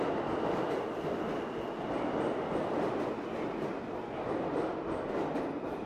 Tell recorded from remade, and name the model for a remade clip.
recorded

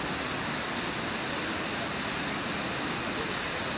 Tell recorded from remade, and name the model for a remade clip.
recorded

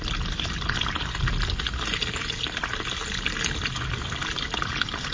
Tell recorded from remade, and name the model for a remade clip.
recorded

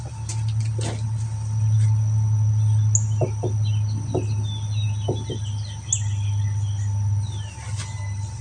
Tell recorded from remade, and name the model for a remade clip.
recorded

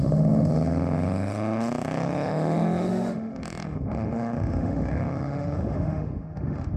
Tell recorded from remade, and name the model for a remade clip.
remade, autoencoder, DAC-VAE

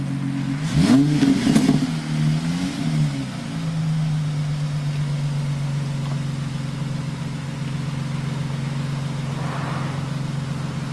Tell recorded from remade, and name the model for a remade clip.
recorded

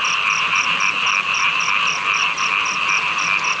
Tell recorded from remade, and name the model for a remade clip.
recorded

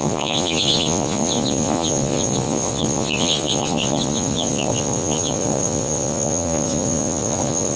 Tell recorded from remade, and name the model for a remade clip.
remade, vocoder, Vocos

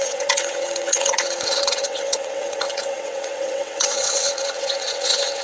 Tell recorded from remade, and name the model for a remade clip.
remade, vocoder, WaveNeXt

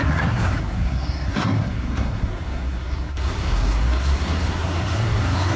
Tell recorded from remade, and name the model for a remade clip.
remade, codec, SNAC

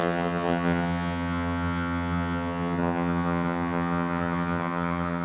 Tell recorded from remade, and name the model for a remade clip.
remade, vocoder, HiFi-GAN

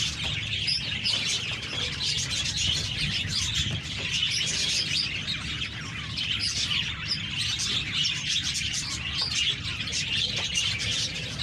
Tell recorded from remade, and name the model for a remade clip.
recorded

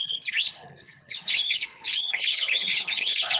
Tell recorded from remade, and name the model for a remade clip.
remade, codec, HILCodec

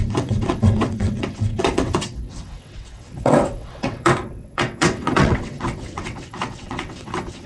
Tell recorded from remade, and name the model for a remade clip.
remade, vocoder, WaveNeXt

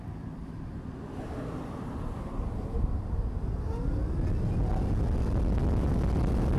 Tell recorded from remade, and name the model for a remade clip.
recorded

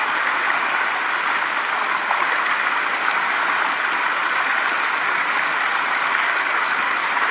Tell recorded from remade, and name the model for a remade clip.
recorded